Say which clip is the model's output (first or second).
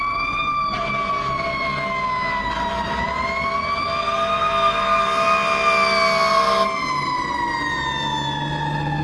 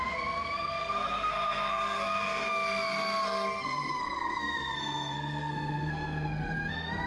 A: second